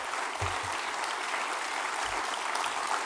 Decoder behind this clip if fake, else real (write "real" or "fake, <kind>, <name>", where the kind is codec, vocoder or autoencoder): real